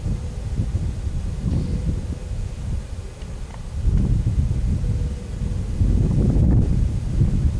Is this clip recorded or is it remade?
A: recorded